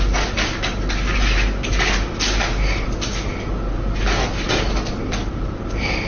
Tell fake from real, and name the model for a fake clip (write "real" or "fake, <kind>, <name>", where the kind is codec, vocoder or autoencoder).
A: real